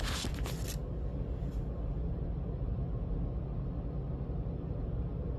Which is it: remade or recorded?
recorded